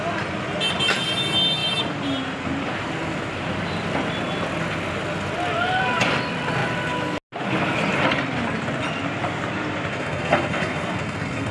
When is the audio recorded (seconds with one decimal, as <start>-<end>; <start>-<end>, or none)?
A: 0.0-9.9